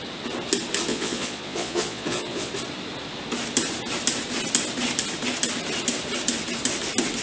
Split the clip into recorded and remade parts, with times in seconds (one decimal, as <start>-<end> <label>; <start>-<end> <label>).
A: 0.0-0.9 recorded; 0.9-2.5 remade; 2.5-7.2 recorded